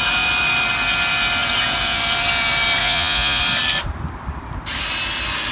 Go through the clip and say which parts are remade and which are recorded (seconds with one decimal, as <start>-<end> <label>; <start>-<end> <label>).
0.0-2.8 recorded; 2.8-3.4 remade; 3.4-5.5 recorded